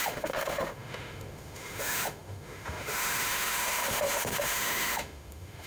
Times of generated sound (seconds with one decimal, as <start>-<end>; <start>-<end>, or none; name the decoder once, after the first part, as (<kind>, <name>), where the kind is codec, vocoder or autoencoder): 0.0-5.7 (autoencoder, DAC-VAE)